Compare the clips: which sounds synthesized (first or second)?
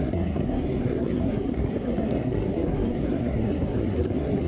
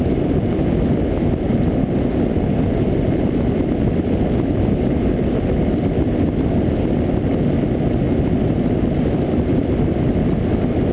first